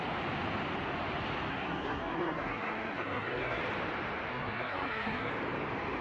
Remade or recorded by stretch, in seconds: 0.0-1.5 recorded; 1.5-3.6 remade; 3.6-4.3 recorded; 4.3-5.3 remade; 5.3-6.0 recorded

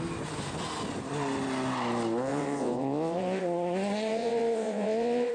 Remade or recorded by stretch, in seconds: 0.0-2.3 recorded; 2.3-3.4 remade; 3.4-4.1 recorded; 4.1-5.3 remade

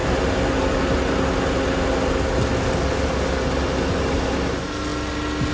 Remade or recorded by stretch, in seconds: 0.0-5.5 recorded

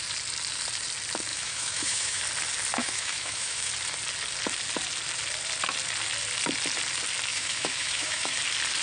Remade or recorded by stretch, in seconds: 0.0-1.3 recorded; 1.3-2.2 remade; 2.2-2.8 recorded; 2.8-3.7 remade; 3.7-7.3 recorded; 7.3-8.4 remade; 8.4-8.8 recorded

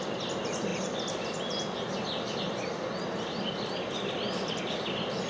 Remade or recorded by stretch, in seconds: 0.0-5.3 recorded

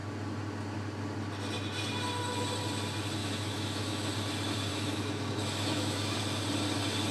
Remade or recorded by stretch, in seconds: 0.0-3.2 recorded; 3.2-4.1 remade; 4.1-4.7 recorded; 4.7-6.2 remade; 6.2-7.1 recorded

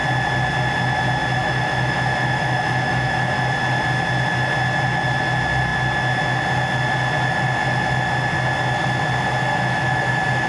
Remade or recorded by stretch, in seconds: 0.0-1.4 recorded; 1.4-3.3 remade; 3.3-9.5 recorded; 9.5-10.1 remade; 10.1-10.5 recorded